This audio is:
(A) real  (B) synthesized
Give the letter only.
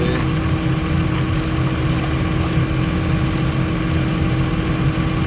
A